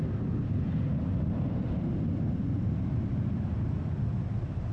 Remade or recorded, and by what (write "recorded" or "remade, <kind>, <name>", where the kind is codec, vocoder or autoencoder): recorded